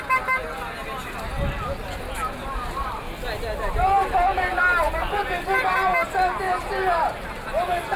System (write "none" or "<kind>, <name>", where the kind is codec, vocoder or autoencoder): none